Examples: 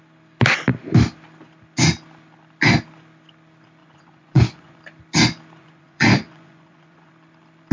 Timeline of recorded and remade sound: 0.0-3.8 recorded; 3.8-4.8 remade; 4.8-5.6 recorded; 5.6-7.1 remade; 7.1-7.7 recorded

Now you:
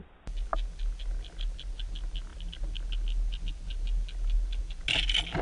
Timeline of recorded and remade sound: 0.0-5.4 recorded

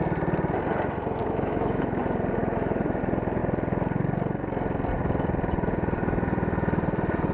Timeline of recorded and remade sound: 0.0-1.2 recorded; 1.2-2.0 remade; 2.0-2.4 recorded; 2.4-3.0 remade; 3.0-7.3 recorded

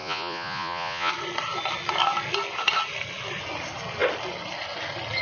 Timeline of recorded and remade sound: 0.0-1.1 remade; 1.1-5.2 recorded

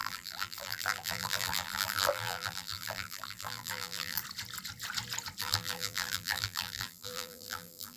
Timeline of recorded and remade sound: 0.0-4.2 remade; 4.2-5.4 recorded; 5.4-8.0 remade

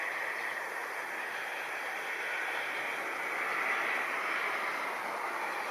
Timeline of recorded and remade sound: 0.0-0.8 recorded; 0.8-1.9 remade; 1.9-3.5 recorded; 3.5-4.3 remade; 4.3-5.7 recorded

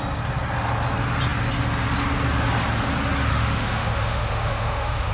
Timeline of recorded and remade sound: 0.0-3.3 recorded; 3.3-5.1 remade

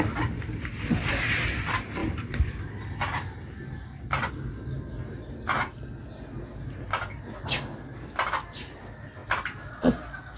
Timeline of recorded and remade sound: 0.0-2.0 recorded; 2.0-4.3 remade; 4.3-10.4 recorded